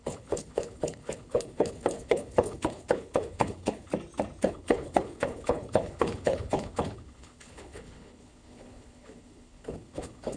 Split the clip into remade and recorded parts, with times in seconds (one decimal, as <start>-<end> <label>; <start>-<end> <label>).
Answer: 0.0-3.9 remade; 3.9-4.4 recorded; 4.4-10.4 remade